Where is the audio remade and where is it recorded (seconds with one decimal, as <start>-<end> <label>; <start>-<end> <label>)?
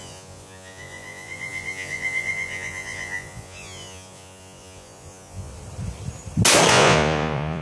0.0-5.5 remade; 5.5-6.7 recorded; 6.7-7.6 remade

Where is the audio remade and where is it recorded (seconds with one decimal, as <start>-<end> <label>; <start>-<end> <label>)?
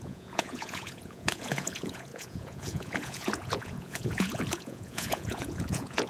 0.0-6.1 remade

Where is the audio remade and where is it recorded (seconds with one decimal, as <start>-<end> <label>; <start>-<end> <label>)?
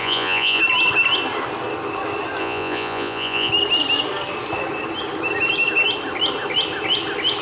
0.0-0.6 remade; 0.6-2.4 recorded; 2.4-3.5 remade; 3.5-7.4 recorded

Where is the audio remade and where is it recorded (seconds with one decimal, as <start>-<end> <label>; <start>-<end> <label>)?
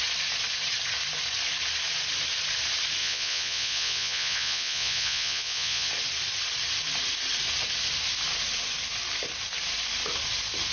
0.0-3.0 recorded; 3.0-5.9 remade; 5.9-10.7 recorded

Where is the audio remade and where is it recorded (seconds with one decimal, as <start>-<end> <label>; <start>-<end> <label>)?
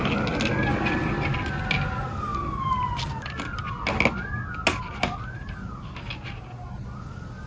0.0-7.5 recorded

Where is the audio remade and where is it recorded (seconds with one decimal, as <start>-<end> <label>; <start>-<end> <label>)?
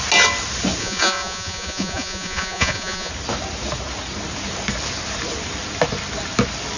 0.0-0.8 recorded; 0.8-3.1 remade; 3.1-6.8 recorded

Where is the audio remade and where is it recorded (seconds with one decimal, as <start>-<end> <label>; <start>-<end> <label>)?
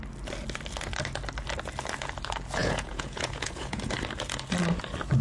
0.0-2.6 recorded; 2.6-3.9 remade; 3.9-5.2 recorded